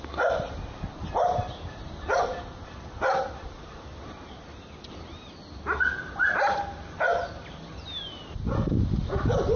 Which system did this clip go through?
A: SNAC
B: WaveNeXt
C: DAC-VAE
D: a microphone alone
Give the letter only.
D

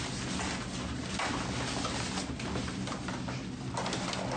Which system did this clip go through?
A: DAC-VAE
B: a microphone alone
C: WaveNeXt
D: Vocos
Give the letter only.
B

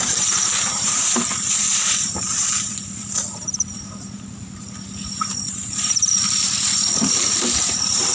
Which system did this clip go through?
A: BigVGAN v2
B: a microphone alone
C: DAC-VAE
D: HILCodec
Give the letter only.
A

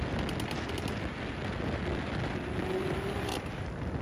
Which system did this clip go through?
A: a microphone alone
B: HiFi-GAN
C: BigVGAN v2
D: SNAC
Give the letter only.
A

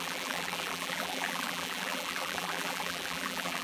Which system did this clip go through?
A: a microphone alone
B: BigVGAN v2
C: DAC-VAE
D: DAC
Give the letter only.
B